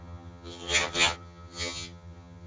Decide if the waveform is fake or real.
fake